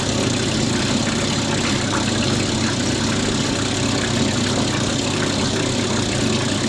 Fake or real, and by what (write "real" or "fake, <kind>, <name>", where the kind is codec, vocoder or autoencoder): real